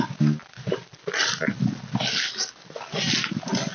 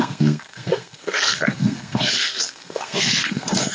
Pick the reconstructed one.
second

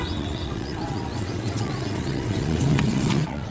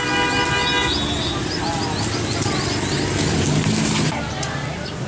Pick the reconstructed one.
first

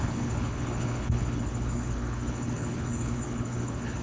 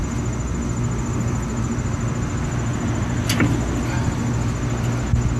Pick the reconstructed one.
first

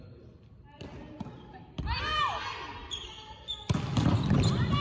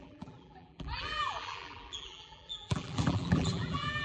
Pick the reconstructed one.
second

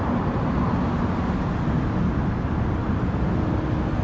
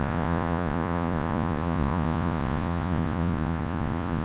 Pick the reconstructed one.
second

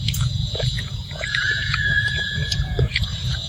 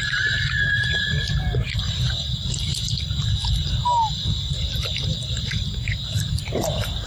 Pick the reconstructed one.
first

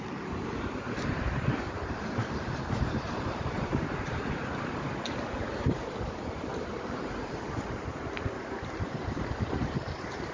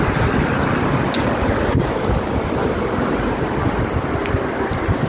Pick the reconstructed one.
first